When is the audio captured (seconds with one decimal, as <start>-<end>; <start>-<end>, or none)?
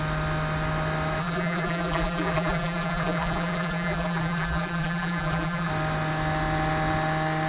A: 0.0-1.2; 5.7-7.5